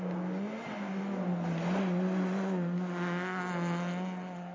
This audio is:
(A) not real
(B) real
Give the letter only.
B